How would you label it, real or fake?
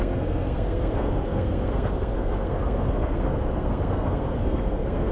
fake